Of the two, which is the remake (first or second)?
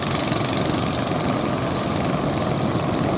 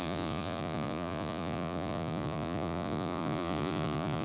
second